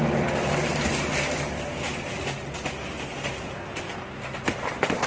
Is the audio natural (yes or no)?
yes